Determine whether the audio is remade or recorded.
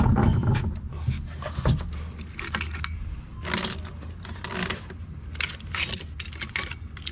recorded